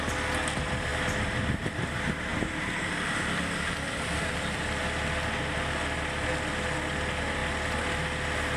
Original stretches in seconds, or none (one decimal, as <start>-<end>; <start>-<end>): 0.0-2.3; 4.8-8.6